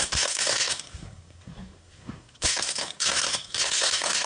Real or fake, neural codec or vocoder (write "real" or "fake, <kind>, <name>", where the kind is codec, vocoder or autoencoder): fake, codec, SNAC